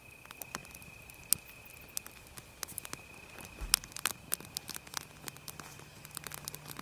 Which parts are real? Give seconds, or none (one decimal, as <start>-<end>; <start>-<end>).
0.0-6.8